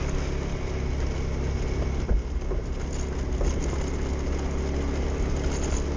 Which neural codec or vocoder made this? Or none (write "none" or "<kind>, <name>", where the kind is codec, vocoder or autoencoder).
none